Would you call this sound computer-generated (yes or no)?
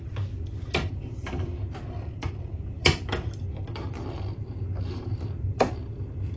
yes